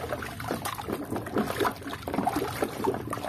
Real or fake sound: real